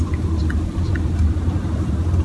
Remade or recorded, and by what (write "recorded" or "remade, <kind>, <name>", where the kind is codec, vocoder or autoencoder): recorded